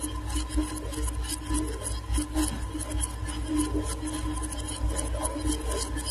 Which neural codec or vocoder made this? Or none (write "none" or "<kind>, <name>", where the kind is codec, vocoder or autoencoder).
none